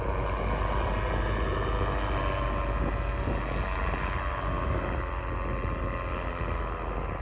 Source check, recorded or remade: recorded